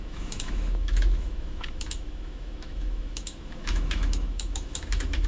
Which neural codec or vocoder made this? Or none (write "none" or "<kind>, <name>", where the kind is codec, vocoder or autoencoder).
autoencoder, DAC-VAE